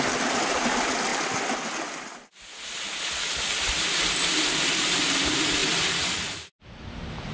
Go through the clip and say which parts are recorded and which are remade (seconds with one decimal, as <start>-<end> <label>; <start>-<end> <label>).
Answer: 0.0-7.3 recorded